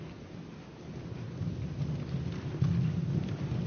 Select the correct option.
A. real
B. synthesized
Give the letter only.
A